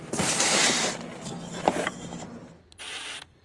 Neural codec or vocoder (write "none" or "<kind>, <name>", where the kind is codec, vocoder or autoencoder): vocoder, BigVGAN v2